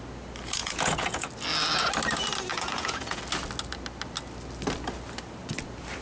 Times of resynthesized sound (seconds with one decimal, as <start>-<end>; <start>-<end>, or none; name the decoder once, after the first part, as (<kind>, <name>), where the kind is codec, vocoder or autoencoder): 0.6-1.3 (vocoder, Vocos); 2.5-3.2